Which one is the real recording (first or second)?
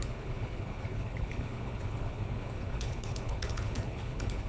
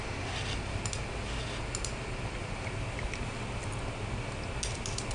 second